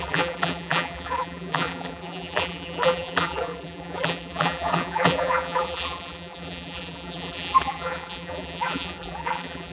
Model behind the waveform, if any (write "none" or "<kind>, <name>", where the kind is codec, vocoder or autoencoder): vocoder, BigVGAN v2